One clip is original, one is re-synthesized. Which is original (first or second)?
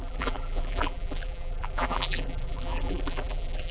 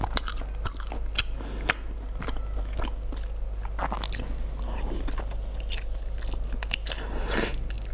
second